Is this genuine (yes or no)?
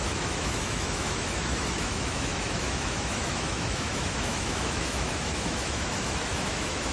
no